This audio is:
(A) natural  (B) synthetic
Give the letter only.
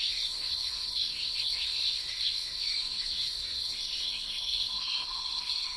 B